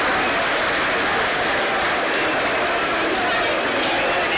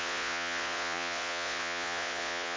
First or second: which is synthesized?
second